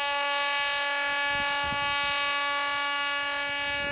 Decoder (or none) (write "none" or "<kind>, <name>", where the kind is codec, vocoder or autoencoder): none